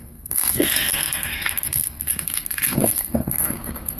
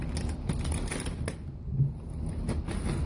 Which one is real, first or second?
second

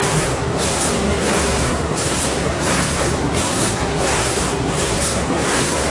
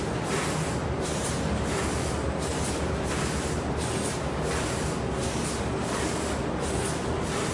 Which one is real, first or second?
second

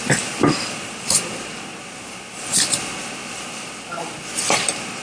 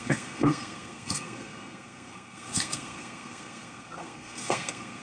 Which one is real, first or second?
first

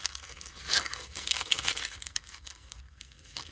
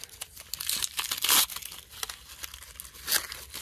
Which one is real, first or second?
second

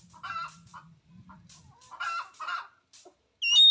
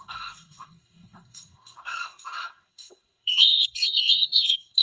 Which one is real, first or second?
first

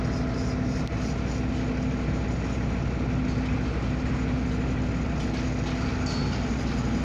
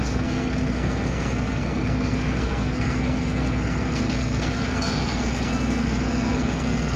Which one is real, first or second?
first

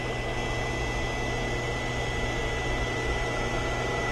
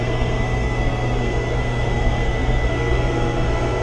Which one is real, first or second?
first